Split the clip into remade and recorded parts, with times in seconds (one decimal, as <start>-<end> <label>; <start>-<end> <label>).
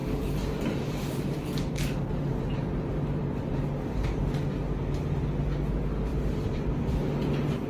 0.0-4.2 remade; 4.2-6.1 recorded; 6.1-6.7 remade; 6.7-7.7 recorded